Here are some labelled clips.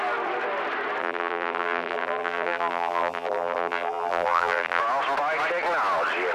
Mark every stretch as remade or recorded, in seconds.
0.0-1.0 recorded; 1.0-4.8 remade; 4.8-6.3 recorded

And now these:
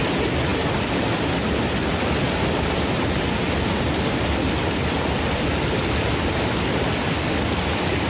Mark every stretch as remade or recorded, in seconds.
0.0-8.1 recorded

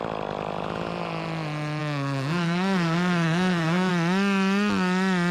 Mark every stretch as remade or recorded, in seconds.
0.0-1.8 recorded; 1.8-3.9 remade; 3.9-5.3 recorded

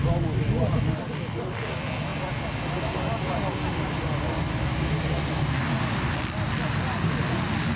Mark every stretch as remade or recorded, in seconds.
0.0-7.8 recorded

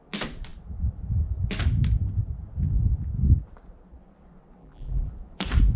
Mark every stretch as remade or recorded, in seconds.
0.0-4.6 recorded; 4.6-5.1 remade; 5.1-5.8 recorded

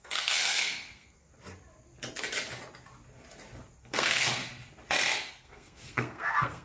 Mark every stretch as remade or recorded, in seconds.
0.0-1.3 remade; 1.3-3.8 recorded; 3.8-4.4 remade; 4.4-5.3 recorded; 5.3-6.6 remade